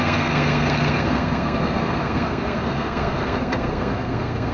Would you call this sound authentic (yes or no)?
no